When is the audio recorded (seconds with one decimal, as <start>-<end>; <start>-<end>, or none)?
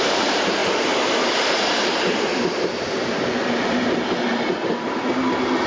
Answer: 0.6-1.3; 2.3-5.7